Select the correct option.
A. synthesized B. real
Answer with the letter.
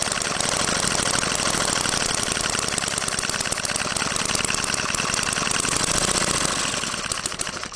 B